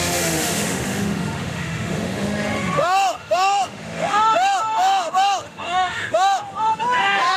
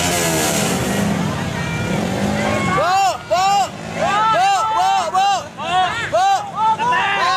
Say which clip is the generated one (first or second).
first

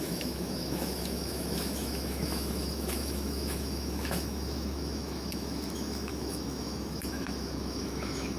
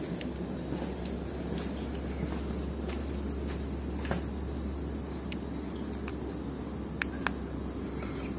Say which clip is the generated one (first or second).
first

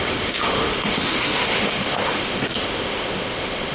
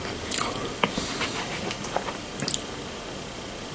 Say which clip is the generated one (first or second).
first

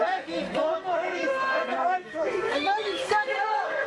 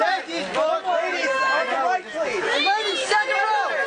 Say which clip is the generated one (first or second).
first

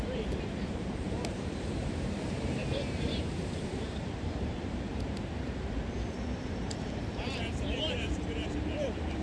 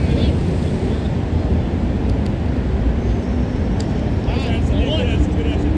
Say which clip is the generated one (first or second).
first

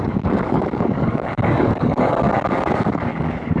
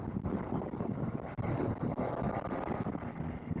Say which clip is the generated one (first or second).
first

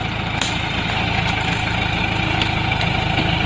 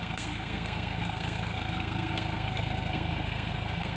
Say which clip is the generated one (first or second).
second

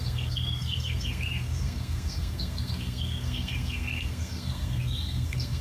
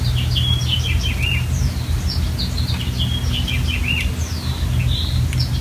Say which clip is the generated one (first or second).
first